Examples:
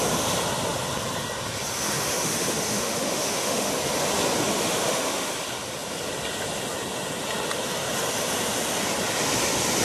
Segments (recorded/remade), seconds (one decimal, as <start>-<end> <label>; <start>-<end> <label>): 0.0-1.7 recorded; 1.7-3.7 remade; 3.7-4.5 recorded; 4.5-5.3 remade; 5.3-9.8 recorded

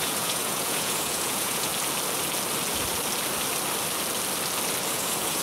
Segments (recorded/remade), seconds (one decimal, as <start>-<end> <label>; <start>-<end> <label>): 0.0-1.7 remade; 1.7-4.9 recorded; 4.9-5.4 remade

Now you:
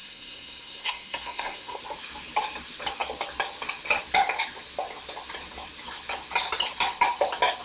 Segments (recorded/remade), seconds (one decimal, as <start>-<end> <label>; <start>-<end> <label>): 0.0-1.8 remade; 1.8-7.6 recorded

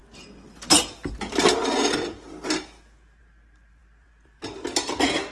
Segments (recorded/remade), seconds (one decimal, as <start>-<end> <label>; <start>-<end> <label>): 0.0-3.8 recorded; 3.8-5.3 remade

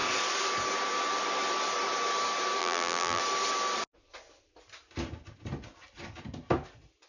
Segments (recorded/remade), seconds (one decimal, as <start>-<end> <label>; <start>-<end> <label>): 0.0-2.6 recorded; 2.6-3.2 remade; 3.2-7.1 recorded

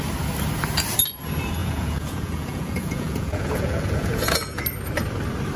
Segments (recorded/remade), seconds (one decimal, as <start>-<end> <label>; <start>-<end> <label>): 0.0-1.6 recorded; 1.6-4.6 remade; 4.6-5.6 recorded